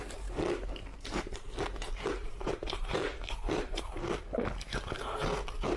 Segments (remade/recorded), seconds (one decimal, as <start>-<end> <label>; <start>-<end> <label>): 0.0-0.9 recorded; 0.9-1.5 remade; 1.5-2.2 recorded; 2.2-3.8 remade; 3.8-5.8 recorded